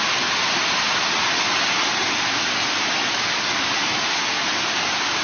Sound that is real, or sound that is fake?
real